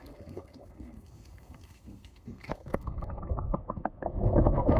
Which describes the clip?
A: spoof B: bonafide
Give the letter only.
A